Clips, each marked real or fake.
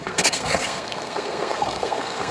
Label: fake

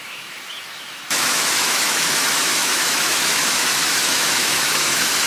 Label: fake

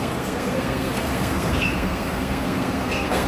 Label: fake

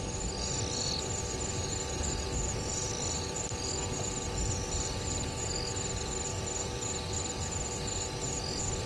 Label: real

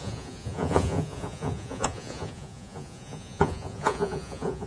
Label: fake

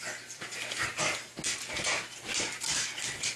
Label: real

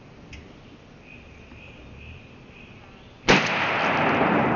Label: real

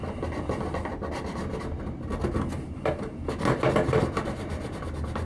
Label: real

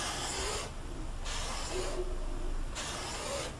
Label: real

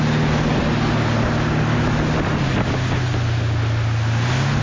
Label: real